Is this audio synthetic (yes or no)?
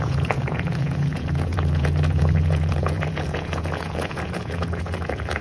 yes